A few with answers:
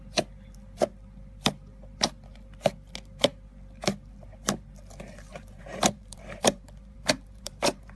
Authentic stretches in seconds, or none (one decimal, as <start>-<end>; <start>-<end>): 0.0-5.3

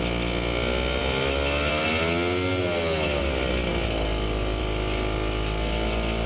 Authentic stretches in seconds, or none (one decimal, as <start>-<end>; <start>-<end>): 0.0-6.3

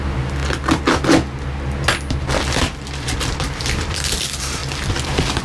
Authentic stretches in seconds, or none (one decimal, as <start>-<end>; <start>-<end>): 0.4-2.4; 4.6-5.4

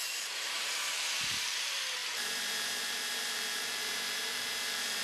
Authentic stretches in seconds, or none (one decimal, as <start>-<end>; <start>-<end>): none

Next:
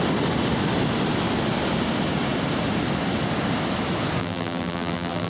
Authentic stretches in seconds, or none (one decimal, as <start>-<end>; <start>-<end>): 0.0-4.2

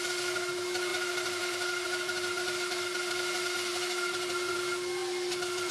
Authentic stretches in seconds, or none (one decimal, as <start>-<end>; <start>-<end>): 0.0-5.7

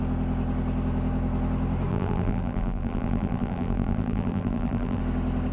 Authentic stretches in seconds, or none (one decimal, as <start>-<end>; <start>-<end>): 0.0-1.9; 5.0-5.5